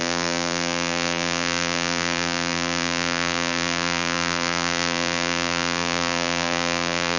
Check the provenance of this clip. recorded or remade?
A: remade